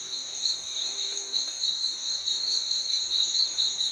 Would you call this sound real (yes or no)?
no